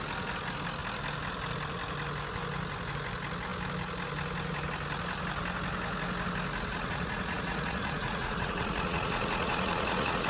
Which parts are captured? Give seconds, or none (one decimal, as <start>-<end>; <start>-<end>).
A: 0.0-6.7